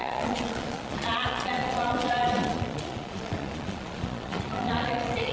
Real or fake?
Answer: fake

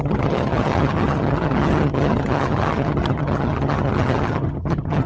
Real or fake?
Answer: fake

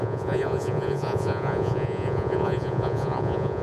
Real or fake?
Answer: fake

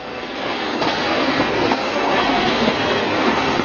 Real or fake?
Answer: fake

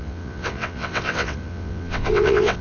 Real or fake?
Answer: fake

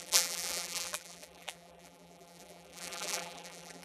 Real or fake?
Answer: fake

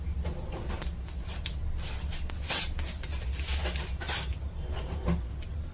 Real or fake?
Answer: real